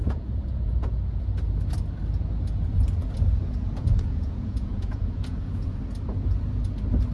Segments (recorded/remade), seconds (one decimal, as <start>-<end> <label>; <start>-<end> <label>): 0.0-1.2 remade; 1.2-3.3 recorded; 3.3-5.8 remade; 5.8-7.1 recorded